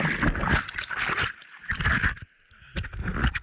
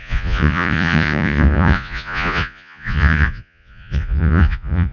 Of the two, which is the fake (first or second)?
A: second